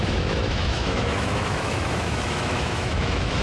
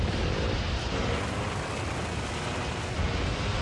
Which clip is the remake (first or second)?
first